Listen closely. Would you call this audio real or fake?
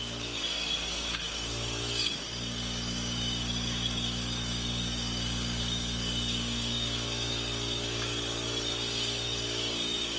fake